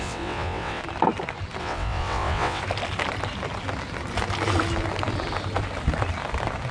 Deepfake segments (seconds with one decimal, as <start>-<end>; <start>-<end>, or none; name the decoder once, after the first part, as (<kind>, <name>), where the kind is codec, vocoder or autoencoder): 0.0-0.8 (vocoder, WaveNeXt); 1.6-2.6